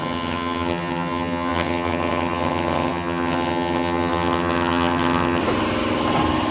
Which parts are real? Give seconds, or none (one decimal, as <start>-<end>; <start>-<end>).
5.4-6.5

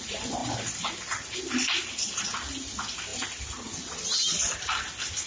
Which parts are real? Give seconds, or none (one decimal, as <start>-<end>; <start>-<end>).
0.0-5.3

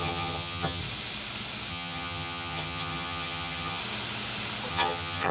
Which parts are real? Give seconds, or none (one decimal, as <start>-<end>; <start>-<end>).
0.8-1.7; 3.8-4.7

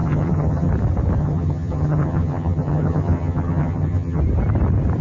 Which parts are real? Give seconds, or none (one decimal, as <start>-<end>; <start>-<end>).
0.7-1.2; 4.2-5.0

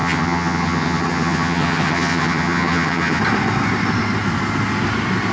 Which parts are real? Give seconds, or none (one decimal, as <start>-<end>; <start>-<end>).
3.2-5.3

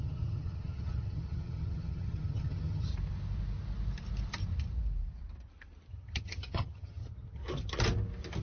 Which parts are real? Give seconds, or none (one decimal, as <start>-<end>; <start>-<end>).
2.9-5.9; 7.4-8.4

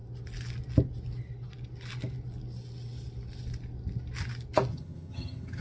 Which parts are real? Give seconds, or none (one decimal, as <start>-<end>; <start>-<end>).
0.0-4.7